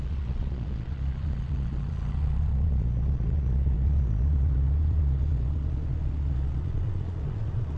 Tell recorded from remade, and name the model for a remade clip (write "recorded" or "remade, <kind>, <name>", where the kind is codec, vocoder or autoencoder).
remade, vocoder, Vocos